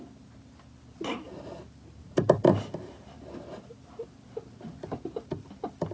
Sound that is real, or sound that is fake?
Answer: real